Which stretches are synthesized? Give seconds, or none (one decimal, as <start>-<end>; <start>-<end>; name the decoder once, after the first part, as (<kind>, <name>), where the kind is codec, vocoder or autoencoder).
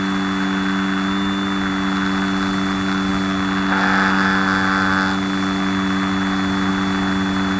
none